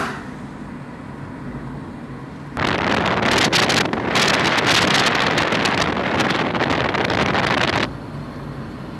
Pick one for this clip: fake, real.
real